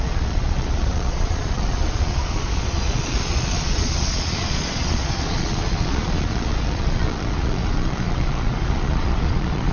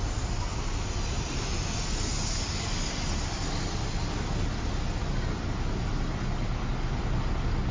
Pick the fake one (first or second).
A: first